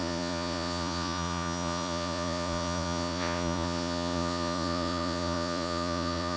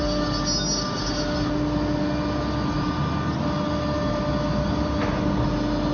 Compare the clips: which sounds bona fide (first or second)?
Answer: second